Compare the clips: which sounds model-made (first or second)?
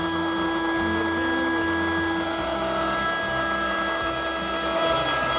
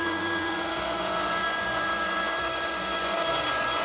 second